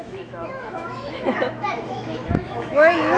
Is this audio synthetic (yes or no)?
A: yes